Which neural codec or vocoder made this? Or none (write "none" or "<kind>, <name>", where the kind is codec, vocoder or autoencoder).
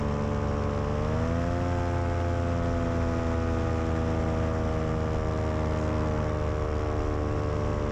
none